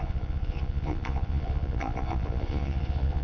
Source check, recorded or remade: remade